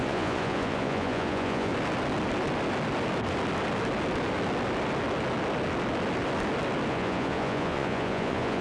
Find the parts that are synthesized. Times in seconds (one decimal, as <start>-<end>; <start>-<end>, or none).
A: 0.0-1.7; 6.9-8.6